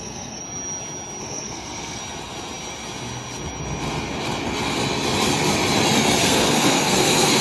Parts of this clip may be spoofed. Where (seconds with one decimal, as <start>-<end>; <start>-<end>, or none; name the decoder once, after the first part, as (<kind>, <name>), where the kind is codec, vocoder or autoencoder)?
0.0-0.4 (codec, SNAC); 1.2-2.0; 6.2-7.4